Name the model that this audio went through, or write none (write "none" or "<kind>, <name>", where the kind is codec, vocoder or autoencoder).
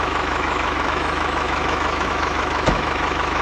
autoencoder, DAC-VAE